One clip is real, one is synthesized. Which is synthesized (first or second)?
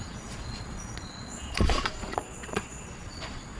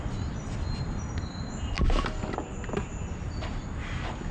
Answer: first